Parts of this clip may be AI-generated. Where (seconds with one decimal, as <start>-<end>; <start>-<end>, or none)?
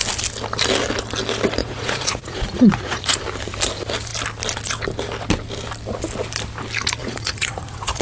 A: 1.6-3.2; 7.0-8.0